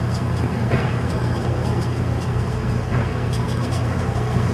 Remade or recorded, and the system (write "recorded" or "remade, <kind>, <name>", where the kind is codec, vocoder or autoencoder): remade, codec, SNAC